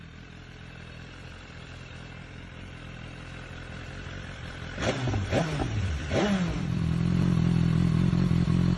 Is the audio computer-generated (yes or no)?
yes